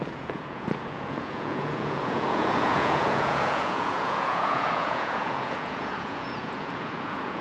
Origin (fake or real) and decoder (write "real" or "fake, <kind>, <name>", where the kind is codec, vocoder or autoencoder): fake, vocoder, Vocos